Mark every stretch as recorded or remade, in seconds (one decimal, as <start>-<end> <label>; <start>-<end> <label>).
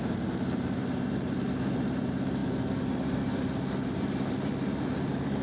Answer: 0.0-5.4 recorded